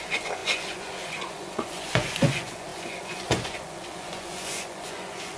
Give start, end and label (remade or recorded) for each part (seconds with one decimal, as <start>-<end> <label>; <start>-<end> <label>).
0.0-5.4 remade